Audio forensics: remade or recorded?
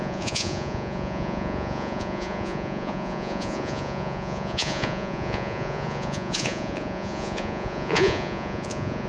remade